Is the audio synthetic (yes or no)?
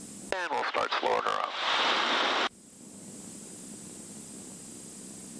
no